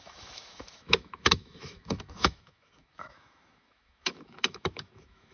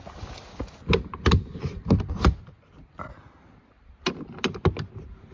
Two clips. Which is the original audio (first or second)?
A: second